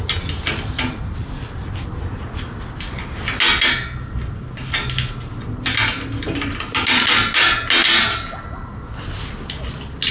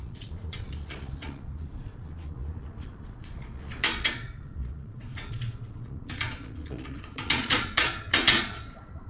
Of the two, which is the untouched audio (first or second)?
first